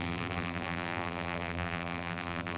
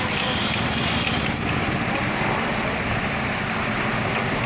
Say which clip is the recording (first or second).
second